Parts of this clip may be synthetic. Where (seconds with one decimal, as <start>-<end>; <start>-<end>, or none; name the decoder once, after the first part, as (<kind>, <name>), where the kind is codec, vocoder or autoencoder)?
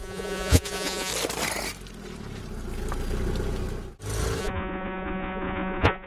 0.0-1.1 (vocoder, Vocos); 4.4-6.1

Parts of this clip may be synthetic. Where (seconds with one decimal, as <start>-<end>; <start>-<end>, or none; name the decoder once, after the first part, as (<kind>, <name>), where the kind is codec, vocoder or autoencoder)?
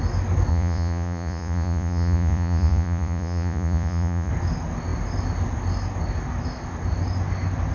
0.5-4.3 (vocoder, Vocos)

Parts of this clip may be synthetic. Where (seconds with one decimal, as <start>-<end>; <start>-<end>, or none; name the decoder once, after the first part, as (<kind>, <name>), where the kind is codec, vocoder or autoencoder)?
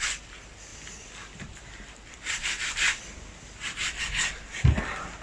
0.7-3.0 (vocoder, BigVGAN v2)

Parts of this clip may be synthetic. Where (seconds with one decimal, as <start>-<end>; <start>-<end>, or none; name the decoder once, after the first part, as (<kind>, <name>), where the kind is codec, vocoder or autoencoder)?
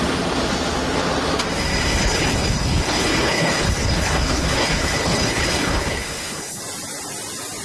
2.0-6.6 (codec, HILCodec)